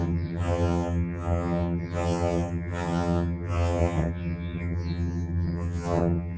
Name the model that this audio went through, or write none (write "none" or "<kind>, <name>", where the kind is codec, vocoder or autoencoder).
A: vocoder, HiFi-GAN